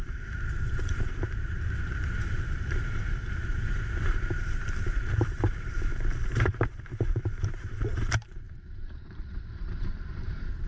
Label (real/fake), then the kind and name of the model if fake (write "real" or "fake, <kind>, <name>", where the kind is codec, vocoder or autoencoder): fake, vocoder, BigVGAN v2